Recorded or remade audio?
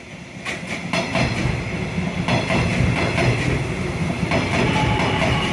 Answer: recorded